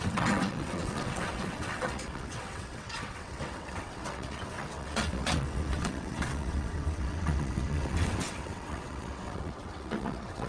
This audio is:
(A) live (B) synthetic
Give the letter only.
B